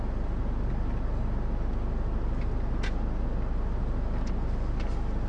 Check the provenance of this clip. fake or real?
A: real